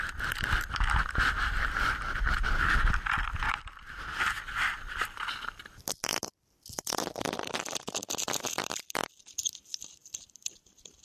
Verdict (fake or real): real